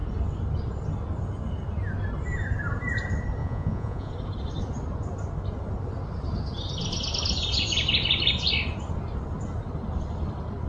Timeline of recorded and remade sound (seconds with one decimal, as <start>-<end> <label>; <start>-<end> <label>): 0.0-3.4 recorded; 3.4-4.1 remade; 4.1-10.7 recorded